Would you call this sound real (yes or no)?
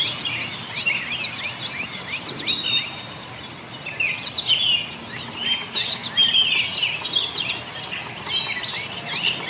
yes